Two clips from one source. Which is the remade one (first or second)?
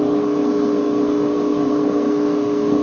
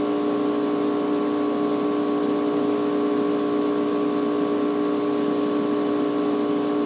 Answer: first